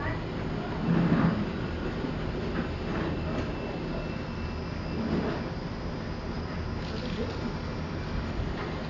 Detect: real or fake real